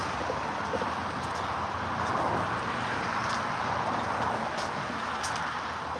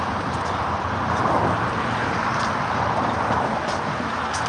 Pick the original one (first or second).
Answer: first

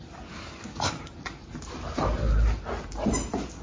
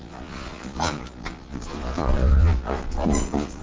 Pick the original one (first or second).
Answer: first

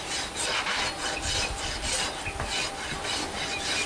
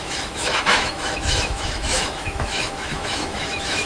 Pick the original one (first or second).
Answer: first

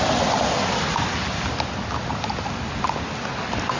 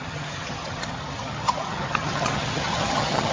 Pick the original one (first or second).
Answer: first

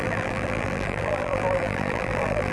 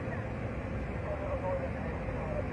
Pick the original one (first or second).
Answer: second